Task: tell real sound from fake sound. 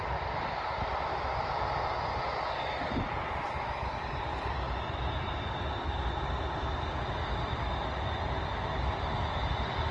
real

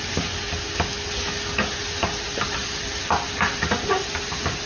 real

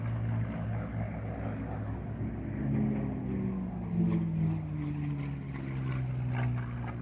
real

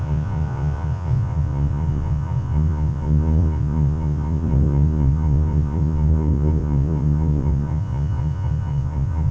fake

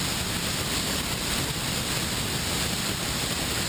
real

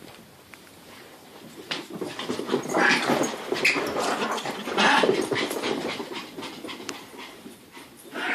fake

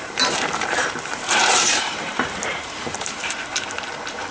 fake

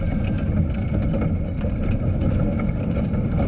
fake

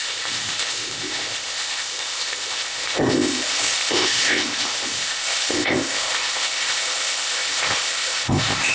fake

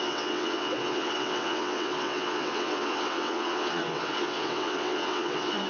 fake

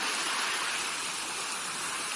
real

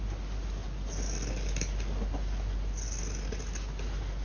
real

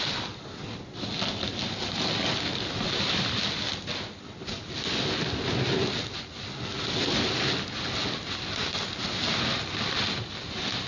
real